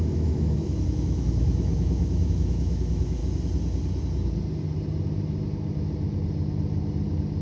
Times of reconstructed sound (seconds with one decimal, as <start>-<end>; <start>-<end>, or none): 0.0-3.2